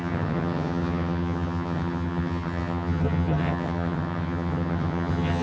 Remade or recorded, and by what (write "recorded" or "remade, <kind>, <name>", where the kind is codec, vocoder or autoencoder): remade, vocoder, HiFi-GAN